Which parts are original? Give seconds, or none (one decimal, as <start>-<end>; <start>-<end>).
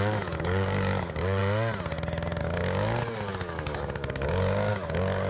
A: 1.4-2.4